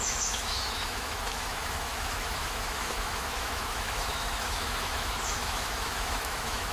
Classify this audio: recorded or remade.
remade